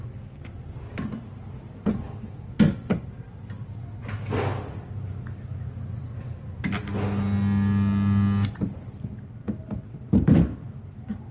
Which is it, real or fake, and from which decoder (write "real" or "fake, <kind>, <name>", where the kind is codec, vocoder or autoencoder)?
real